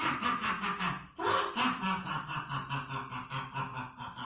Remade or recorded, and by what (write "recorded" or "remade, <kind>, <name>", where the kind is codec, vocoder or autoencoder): recorded